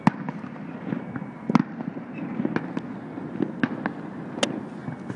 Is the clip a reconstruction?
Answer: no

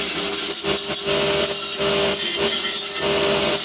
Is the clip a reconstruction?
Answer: no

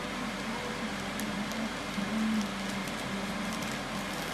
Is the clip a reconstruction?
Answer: no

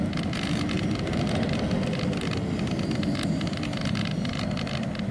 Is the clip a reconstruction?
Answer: no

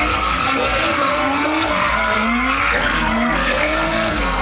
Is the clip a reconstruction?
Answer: yes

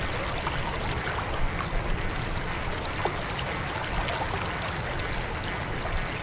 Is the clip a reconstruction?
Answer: no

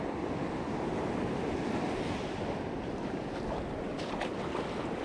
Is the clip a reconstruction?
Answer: no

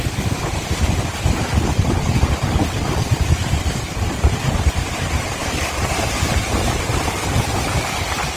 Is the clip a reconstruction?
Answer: no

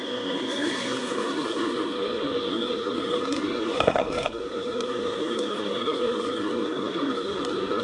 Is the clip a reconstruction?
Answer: yes